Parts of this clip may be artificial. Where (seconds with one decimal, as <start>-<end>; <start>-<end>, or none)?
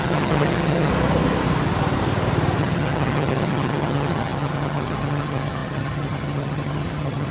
0.0-0.9; 2.6-7.3